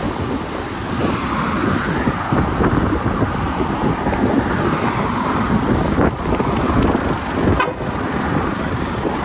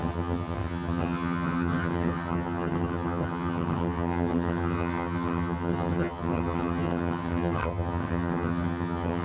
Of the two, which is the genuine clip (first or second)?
first